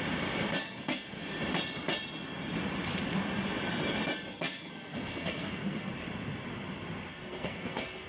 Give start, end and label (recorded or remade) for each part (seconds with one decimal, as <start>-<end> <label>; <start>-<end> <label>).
0.0-0.6 recorded; 0.6-1.2 remade; 1.2-4.3 recorded; 4.3-5.9 remade; 5.9-7.1 recorded; 7.1-8.1 remade